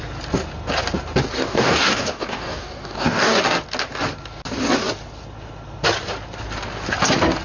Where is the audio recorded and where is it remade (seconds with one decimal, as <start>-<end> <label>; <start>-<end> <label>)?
0.0-1.4 recorded; 1.4-3.4 remade; 3.4-7.4 recorded